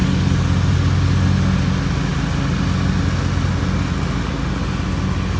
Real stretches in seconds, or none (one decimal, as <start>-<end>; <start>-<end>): 0.0-5.4